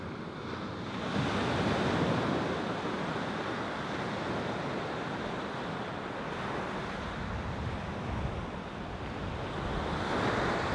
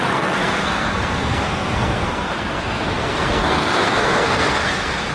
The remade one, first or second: second